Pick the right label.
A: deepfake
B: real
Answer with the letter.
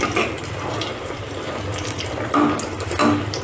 B